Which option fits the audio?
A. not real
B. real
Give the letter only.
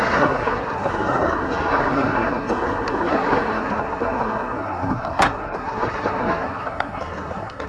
A